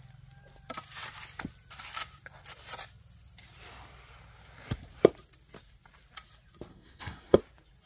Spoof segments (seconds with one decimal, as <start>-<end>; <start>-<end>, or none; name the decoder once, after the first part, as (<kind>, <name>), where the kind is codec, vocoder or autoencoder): 6.7-7.4 (codec, SNAC)